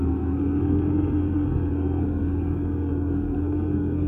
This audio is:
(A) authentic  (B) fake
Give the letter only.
B